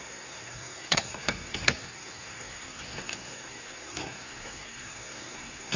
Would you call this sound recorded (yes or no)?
no